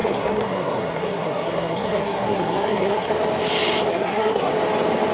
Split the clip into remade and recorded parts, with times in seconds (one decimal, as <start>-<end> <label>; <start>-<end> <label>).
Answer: 0.0-3.1 remade; 3.1-3.9 recorded; 3.9-4.5 remade; 4.5-5.1 recorded

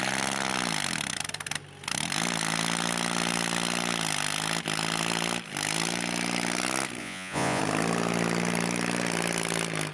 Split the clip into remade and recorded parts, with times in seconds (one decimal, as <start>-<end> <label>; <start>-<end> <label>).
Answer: 0.0-7.0 recorded; 7.0-7.6 remade; 7.6-9.9 recorded

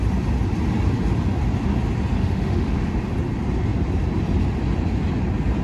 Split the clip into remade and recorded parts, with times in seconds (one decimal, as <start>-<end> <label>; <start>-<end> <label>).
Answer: 0.0-2.2 recorded; 2.2-2.9 remade; 2.9-5.6 recorded